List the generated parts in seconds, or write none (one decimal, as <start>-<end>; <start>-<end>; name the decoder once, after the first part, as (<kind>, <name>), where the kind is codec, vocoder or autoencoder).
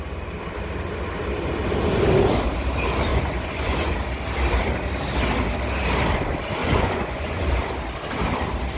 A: 3.1-3.9 (vocoder, Vocos); 6.6-7.5